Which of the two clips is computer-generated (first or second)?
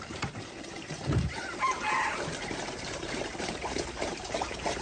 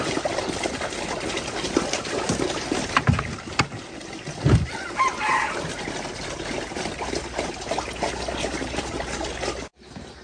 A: first